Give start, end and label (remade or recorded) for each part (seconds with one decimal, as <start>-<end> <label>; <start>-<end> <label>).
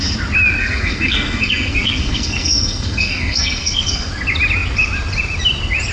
0.0-0.6 recorded; 0.6-4.1 remade; 4.1-5.9 recorded